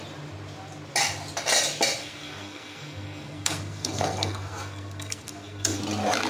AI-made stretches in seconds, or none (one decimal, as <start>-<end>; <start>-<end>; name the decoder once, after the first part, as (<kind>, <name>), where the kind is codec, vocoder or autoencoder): 2.0-5.8 (codec, SNAC)